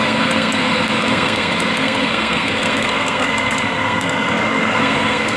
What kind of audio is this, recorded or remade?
remade